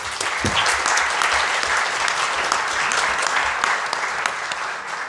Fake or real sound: real